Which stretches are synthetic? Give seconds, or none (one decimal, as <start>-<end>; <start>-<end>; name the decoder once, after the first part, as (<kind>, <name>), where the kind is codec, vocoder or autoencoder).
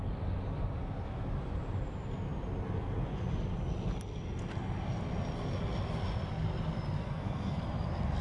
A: 7.0-7.6 (codec, SNAC)